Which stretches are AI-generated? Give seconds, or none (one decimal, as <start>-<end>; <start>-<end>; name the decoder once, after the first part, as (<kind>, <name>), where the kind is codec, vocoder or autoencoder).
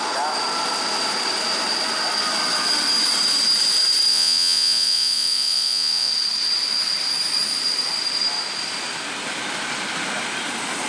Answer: 4.1-6.1 (vocoder, Vocos)